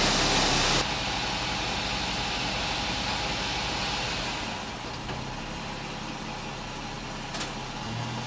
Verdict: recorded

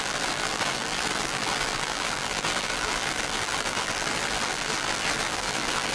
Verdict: remade